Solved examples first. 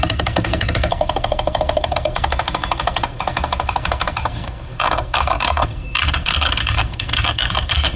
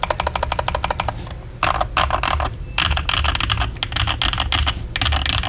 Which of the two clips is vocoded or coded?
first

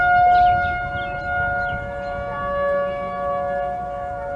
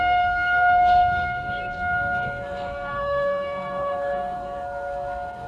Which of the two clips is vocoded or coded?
second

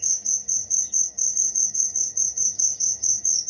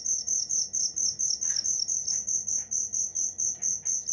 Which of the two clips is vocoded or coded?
first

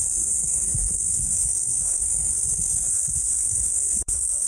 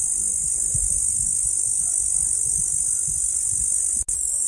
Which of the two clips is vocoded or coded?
first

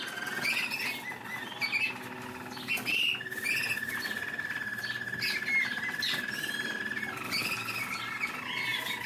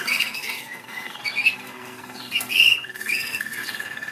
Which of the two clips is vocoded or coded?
second